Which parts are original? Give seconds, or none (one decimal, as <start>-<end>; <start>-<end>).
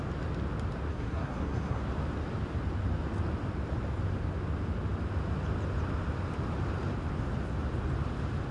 0.0-0.9; 1.8-8.5